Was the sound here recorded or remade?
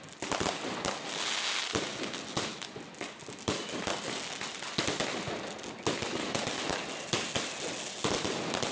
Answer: recorded